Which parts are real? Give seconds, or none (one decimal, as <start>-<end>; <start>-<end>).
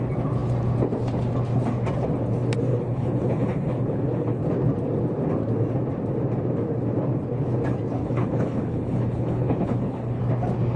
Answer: 0.0-2.7; 4.4-8.0; 10.2-10.8